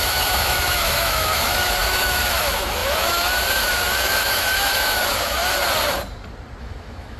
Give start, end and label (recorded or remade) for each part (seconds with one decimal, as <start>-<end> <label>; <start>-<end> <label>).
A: 0.0-5.4 remade; 5.4-6.6 recorded; 6.6-7.2 remade